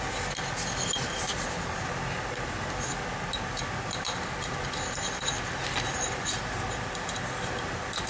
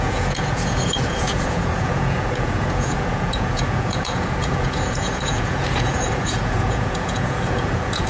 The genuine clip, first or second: first